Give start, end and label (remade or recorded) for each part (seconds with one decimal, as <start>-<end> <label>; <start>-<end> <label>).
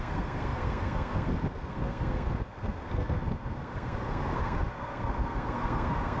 0.0-6.2 remade